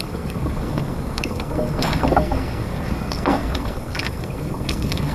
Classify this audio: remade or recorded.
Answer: remade